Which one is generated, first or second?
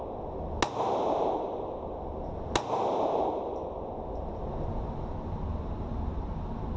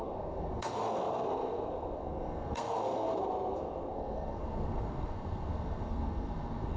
second